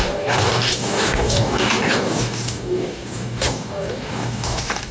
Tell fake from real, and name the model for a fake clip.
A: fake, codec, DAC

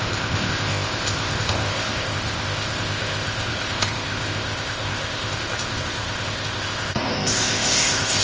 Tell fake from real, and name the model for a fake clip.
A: fake, codec, ZipCodec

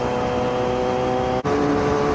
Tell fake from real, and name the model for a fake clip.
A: real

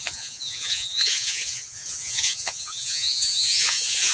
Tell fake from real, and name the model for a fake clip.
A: fake, vocoder, Vocos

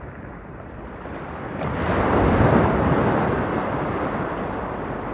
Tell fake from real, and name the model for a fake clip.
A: fake, vocoder, BigVGAN v2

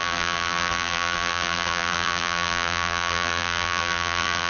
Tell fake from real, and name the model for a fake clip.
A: fake, vocoder, BigVGAN v2